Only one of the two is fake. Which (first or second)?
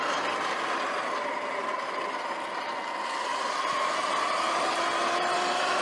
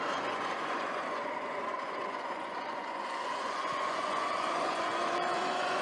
second